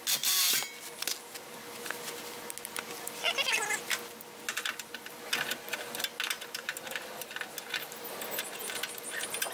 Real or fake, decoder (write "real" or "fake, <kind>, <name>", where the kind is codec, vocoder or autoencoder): real